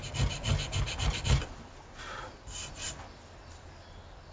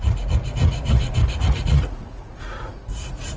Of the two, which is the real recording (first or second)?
first